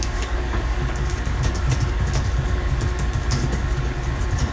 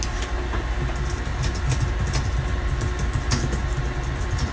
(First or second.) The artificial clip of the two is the first